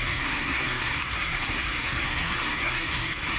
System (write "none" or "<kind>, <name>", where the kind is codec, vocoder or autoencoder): codec, SNAC